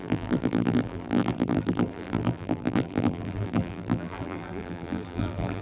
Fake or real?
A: fake